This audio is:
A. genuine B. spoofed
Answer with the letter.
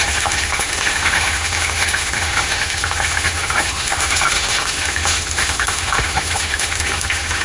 B